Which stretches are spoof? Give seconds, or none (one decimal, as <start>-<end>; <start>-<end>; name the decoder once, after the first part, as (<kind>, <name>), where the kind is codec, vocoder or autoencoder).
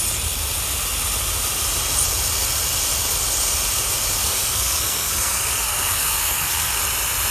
4.2-6.8 (codec, SNAC)